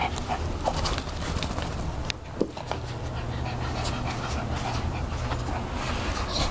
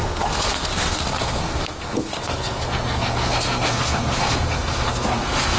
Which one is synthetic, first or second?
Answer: second